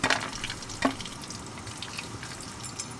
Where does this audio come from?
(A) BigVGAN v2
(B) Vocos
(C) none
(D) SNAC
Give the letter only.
C